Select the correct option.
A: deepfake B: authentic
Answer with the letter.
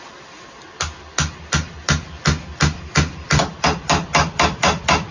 B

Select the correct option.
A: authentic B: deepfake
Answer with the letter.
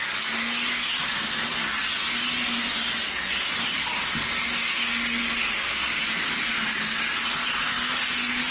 A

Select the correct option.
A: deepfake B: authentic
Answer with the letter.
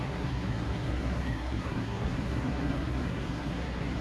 A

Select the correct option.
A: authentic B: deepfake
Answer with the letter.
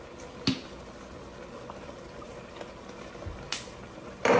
A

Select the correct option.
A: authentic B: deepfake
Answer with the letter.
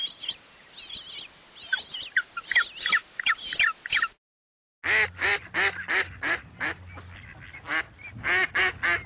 A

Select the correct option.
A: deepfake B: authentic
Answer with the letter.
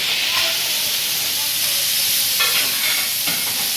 B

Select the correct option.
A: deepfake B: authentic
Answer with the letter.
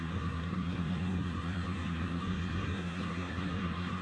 A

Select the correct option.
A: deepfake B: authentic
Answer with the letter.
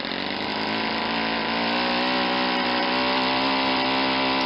B